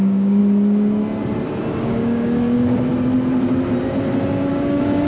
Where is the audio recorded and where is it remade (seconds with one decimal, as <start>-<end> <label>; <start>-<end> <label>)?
0.0-0.4 remade; 0.4-1.8 recorded; 1.8-2.9 remade; 2.9-4.5 recorded; 4.5-5.1 remade